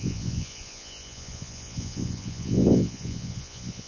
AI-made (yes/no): yes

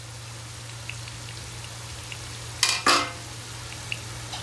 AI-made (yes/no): no